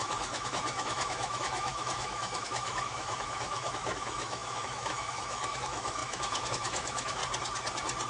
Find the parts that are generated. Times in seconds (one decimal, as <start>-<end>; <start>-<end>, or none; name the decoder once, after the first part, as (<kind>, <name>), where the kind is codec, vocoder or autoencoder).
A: 0.0-7.2 (autoencoder, DAC-VAE)